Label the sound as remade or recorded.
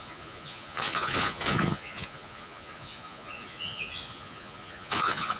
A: remade